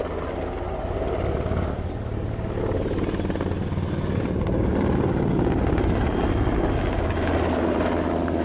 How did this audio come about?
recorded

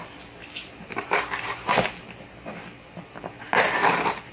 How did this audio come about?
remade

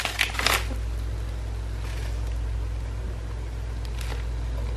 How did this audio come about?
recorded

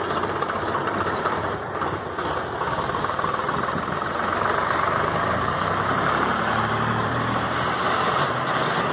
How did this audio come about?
remade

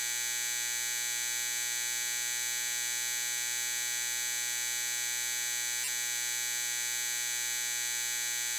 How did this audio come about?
recorded